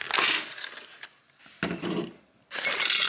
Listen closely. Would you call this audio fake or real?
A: real